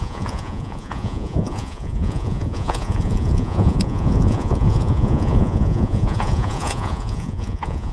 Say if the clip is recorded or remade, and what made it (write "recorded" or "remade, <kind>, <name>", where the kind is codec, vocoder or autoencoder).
remade, vocoder, Vocos